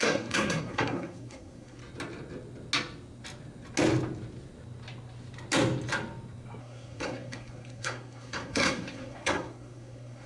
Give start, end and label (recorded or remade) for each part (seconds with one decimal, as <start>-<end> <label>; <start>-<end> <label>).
0.0-1.8 remade; 1.8-6.6 recorded; 6.6-10.3 remade